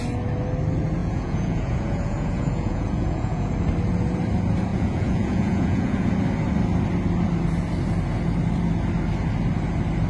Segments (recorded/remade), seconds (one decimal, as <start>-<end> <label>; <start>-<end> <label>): 0.0-1.0 recorded; 1.0-3.5 remade; 3.5-4.7 recorded; 4.7-6.1 remade; 6.1-10.1 recorded